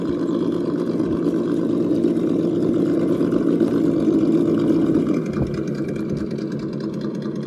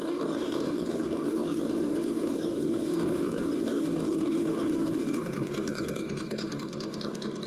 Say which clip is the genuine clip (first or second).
first